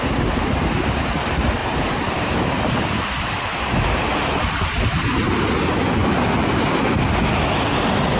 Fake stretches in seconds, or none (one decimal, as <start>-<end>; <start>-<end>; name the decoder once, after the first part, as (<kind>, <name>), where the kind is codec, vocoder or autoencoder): 1.6-2.6 (vocoder, BigVGAN v2)